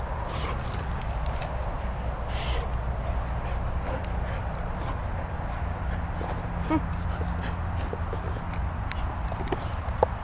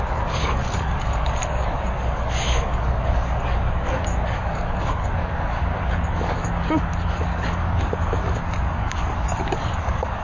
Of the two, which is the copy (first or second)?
second